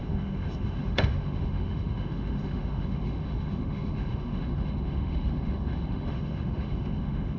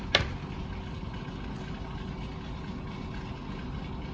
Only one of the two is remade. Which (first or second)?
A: first